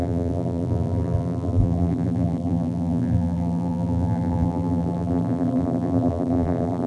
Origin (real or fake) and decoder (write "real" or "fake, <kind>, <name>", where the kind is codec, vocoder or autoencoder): fake, vocoder, BigVGAN v2